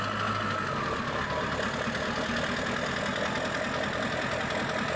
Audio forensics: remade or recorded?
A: recorded